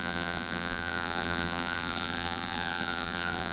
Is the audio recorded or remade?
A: remade